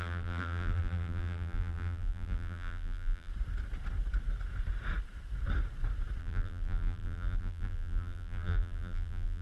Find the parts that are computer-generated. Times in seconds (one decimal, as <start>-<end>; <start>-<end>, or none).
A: 0.0-3.3; 6.2-9.4